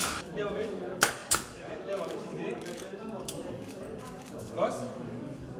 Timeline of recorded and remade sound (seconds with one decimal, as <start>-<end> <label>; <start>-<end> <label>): 0.0-5.6 remade